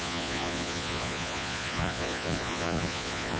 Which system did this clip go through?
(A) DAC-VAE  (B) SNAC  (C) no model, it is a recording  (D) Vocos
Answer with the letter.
D